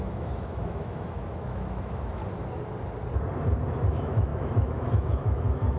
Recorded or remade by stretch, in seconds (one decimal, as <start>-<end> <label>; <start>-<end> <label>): 0.0-2.2 remade; 2.2-3.9 recorded; 3.9-5.8 remade